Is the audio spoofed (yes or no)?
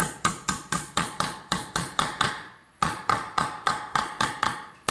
yes